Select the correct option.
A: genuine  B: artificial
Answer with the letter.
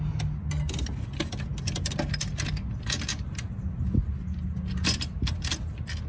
A